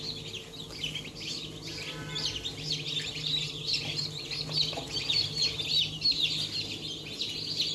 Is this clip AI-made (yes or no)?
no